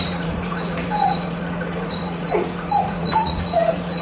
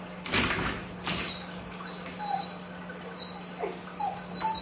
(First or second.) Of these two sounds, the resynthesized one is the first